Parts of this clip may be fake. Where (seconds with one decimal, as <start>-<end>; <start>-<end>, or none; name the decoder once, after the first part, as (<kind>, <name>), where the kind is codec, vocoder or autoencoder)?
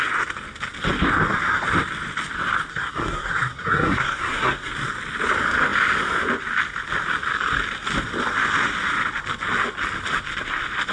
2.7-4.7 (codec, SNAC)